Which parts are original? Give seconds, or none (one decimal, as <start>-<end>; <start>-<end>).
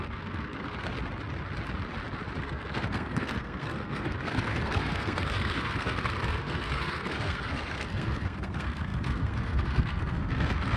0.9-2.4